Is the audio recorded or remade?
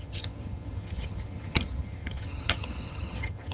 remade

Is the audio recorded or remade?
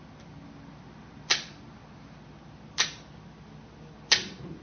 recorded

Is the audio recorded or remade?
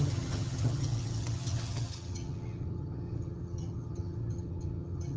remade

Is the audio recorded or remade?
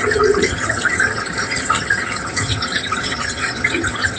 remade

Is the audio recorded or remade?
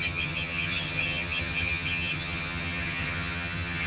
remade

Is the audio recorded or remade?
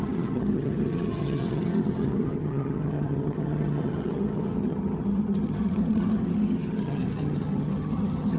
remade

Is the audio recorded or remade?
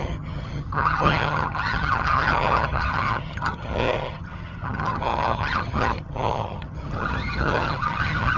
remade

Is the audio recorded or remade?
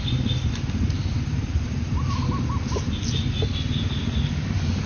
recorded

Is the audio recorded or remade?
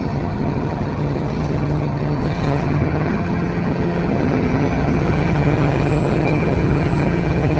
remade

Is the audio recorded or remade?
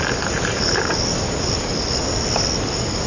recorded